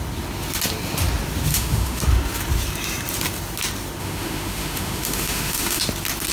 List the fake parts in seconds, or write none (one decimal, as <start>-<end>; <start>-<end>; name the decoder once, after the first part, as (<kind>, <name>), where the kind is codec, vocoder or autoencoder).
1.5-2.0 (autoencoder, DAC-VAE); 4.0-5.8

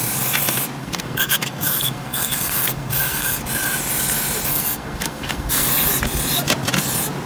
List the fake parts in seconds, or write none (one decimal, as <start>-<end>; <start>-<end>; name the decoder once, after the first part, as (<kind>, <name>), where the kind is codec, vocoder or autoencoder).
0.8-3.4 (codec, SNAC); 4.5-5.7

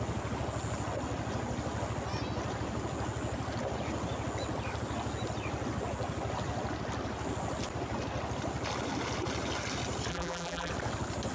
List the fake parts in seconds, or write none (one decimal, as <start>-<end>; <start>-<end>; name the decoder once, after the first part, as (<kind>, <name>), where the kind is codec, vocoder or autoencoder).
10.1-10.7 (vocoder, BigVGAN v2)